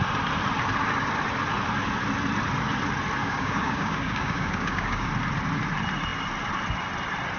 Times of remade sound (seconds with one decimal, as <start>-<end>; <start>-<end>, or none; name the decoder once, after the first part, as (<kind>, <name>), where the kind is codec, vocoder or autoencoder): 3.2-5.1 (codec, DAC)